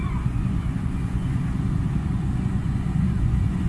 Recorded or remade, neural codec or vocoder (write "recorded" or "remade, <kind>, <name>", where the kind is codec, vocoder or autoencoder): remade, vocoder, Vocos